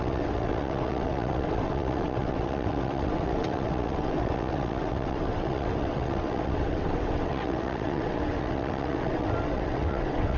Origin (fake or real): fake